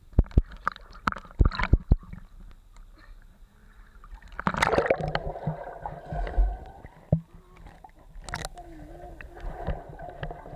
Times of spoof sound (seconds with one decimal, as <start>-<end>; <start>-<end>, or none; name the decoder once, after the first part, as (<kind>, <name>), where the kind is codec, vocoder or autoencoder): none